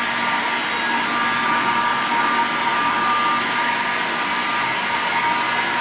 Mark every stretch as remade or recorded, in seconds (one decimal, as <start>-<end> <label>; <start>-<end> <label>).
0.0-5.8 recorded